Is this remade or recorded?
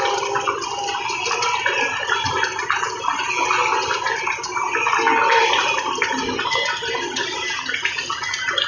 recorded